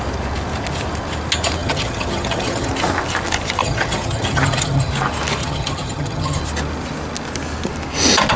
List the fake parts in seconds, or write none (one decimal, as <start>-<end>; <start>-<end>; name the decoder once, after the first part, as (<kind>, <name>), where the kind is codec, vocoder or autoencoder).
1.6-2.7 (vocoder, HiFi-GAN); 3.6-4.9; 5.4-6.4

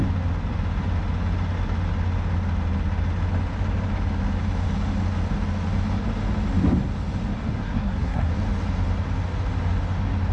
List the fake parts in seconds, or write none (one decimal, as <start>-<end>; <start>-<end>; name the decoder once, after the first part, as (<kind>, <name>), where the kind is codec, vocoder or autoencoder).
7.5-8.3 (codec, SNAC)

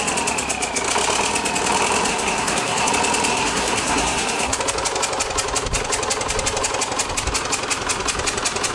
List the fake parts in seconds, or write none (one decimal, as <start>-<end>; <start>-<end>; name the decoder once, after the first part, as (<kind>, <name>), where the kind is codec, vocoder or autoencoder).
2.1-2.9 (codec, SNAC); 3.3-4.6

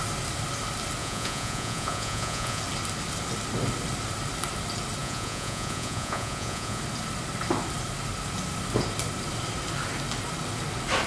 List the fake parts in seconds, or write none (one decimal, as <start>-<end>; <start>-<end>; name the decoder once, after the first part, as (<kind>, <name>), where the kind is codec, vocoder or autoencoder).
1.0-2.6 (vocoder, Vocos); 5.0-6.8

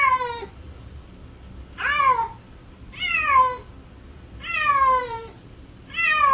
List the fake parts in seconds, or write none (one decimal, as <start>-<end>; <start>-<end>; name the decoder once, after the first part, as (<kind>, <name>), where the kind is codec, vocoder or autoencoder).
0.0-1.2 (vocoder, BigVGAN v2); 5.0-6.3

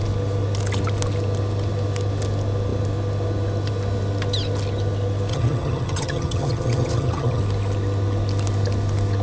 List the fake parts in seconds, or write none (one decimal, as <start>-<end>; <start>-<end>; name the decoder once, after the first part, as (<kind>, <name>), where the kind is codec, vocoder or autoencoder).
5.3-7.4 (vocoder, HiFi-GAN)

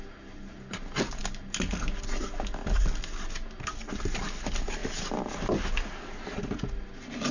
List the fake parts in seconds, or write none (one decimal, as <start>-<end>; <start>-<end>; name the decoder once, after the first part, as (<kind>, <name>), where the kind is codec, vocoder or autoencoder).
4.8-5.8 (vocoder, BigVGAN v2)